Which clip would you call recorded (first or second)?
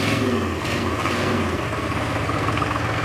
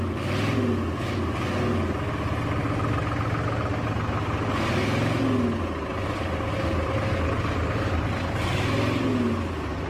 second